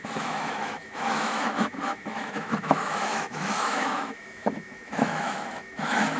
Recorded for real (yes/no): no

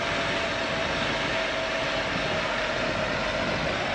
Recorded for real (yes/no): yes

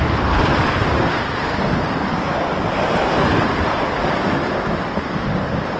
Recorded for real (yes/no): yes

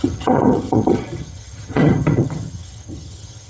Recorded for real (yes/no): no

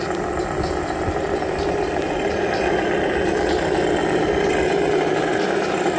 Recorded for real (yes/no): yes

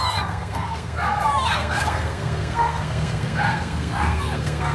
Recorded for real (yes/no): no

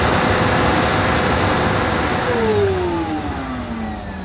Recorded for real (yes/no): yes